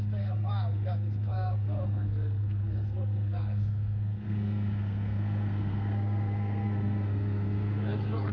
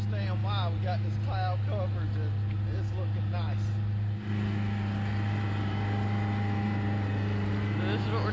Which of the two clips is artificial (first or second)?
first